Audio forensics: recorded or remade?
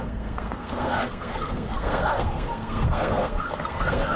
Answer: remade